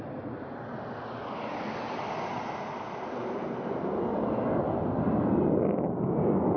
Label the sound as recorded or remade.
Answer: recorded